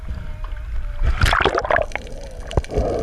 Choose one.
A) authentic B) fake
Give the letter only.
A